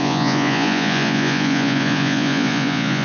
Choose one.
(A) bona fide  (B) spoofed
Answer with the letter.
B